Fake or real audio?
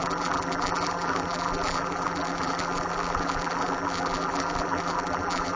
fake